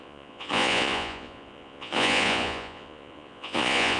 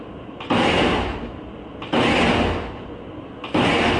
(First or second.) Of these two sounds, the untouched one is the second